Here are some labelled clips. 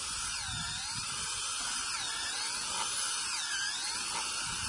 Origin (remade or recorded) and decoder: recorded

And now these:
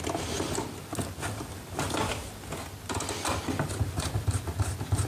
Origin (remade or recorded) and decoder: recorded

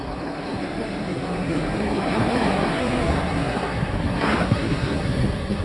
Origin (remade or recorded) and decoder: remade, codec, SNAC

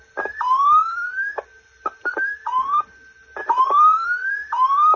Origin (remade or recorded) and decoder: recorded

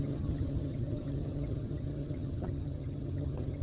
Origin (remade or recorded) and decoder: remade, vocoder, HiFi-GAN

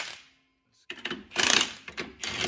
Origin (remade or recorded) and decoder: recorded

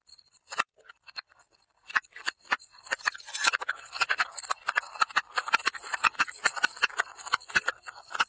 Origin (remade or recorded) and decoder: recorded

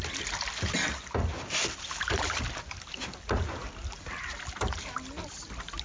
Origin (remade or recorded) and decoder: recorded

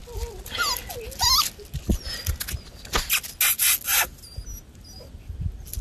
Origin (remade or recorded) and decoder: recorded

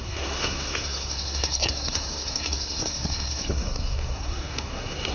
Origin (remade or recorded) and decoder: remade, codec, SNAC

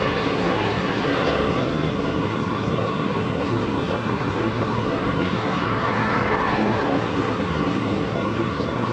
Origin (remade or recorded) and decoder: remade, codec, SNAC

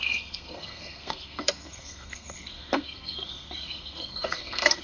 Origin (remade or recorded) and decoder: remade, codec, SNAC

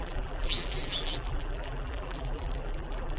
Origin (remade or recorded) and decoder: remade, vocoder, BigVGAN v2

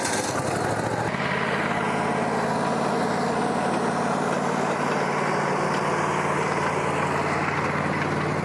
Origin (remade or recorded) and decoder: recorded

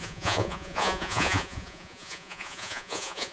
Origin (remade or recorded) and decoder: remade, vocoder, Vocos